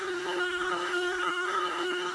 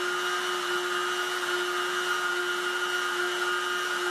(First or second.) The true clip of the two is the second